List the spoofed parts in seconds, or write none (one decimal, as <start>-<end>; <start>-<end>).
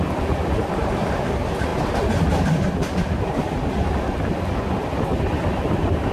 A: none